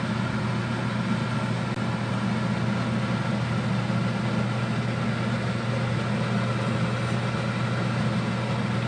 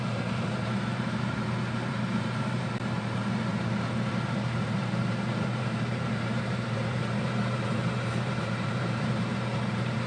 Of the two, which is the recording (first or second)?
first